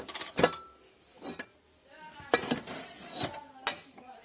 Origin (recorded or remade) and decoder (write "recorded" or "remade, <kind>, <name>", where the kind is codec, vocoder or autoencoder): recorded